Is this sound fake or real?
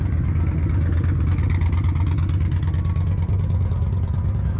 real